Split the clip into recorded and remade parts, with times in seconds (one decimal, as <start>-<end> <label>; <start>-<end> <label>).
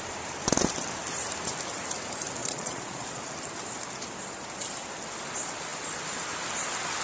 0.0-2.4 recorded; 2.4-3.2 remade; 3.2-7.0 recorded